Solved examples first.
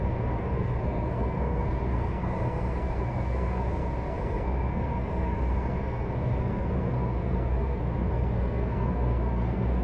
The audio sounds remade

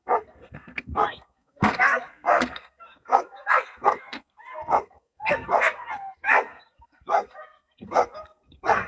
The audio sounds remade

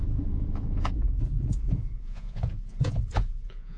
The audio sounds remade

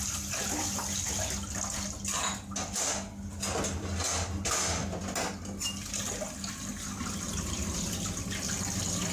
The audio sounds recorded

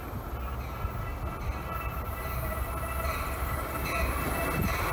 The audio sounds recorded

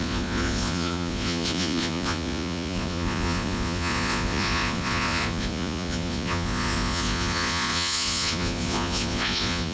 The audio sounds remade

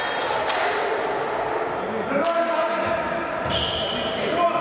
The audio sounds recorded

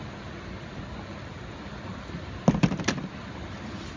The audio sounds recorded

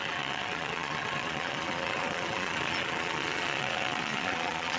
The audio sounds remade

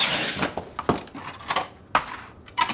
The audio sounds recorded